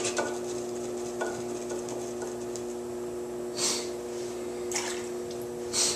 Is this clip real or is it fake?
real